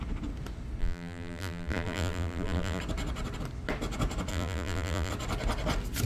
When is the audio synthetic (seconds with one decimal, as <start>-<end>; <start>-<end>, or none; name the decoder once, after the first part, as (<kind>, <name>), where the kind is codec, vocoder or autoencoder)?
0.8-2.8 (vocoder, BigVGAN v2); 4.3-5.1